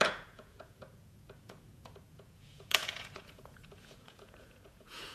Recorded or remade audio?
remade